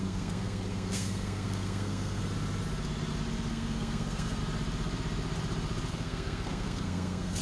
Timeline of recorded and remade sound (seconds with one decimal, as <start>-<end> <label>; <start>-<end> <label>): 0.0-2.2 remade; 2.2-3.5 recorded; 3.5-4.4 remade; 4.4-5.9 recorded; 5.9-7.4 remade